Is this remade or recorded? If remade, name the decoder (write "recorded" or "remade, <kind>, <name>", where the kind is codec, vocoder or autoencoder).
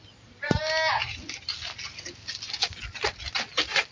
recorded